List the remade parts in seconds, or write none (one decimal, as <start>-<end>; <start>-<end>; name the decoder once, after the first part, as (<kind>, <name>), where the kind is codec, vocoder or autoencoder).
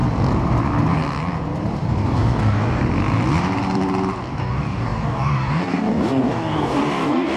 1.9-2.8 (codec, DAC); 4.4-7.4